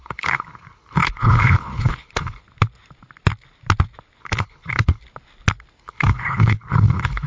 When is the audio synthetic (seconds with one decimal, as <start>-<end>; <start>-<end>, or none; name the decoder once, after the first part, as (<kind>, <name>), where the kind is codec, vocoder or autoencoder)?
0.0-2.4 (codec, HILCodec); 4.2-5.0; 5.8-7.3